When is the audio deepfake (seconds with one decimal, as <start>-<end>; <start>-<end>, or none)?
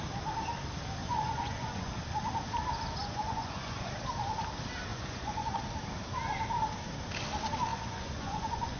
1.0-1.9; 3.0-3.9; 4.9-5.5; 7.7-8.8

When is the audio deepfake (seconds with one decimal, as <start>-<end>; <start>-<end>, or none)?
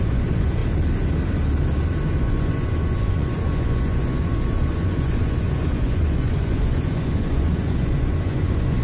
0.0-0.6; 2.2-8.8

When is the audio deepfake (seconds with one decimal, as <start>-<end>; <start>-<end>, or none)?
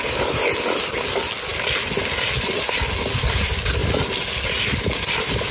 none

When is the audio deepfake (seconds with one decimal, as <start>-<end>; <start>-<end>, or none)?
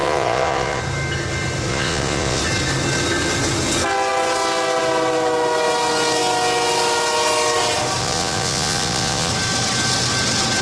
0.0-0.8; 1.7-2.4; 8.0-9.3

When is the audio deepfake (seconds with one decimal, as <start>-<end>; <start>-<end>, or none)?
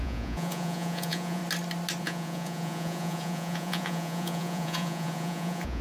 0.0-1.4; 2.0-5.8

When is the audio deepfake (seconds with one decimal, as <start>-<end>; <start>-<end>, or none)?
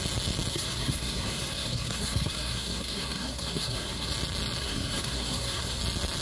0.5-4.1; 4.6-5.8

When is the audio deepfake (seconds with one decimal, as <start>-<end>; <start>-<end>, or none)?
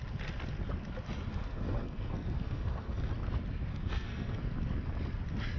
1.3-3.1; 3.7-4.4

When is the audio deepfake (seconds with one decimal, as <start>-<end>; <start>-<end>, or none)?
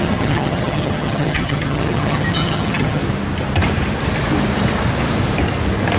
0.0-3.0